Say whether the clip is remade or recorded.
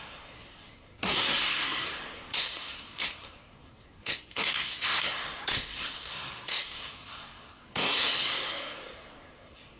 remade